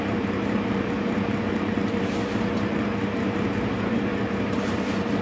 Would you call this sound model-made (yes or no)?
yes